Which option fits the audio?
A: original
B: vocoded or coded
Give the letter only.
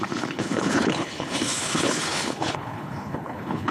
B